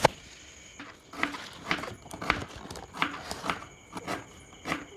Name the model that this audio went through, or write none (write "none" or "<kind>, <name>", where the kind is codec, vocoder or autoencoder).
none